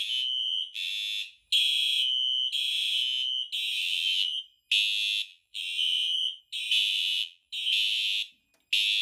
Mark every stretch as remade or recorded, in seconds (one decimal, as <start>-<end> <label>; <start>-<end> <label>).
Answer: 0.0-0.4 recorded; 0.4-0.9 remade; 0.9-3.8 recorded; 3.8-4.4 remade; 4.4-5.3 recorded; 5.3-6.4 remade; 6.4-6.9 recorded; 6.9-7.5 remade; 7.5-9.0 recorded